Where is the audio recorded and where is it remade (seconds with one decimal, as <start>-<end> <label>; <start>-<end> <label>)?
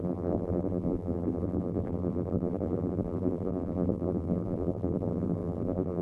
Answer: 0.0-6.0 remade